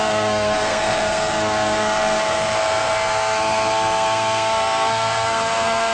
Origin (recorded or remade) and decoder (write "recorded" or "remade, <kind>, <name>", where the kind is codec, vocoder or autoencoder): remade, codec, SNAC